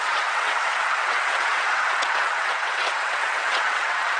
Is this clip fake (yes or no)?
yes